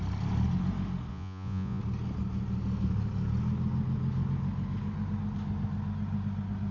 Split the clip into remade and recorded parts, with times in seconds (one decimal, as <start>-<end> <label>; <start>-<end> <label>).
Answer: 0.0-1.1 recorded; 1.1-1.8 remade; 1.8-6.7 recorded